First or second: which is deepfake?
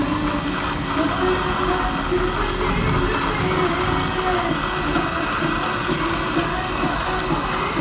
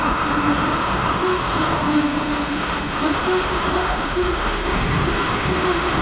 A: second